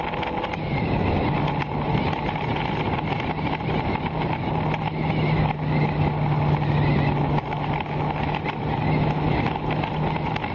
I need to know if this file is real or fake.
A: real